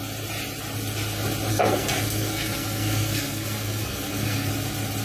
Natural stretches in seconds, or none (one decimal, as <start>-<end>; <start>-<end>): 0.0-1.5; 4.5-5.0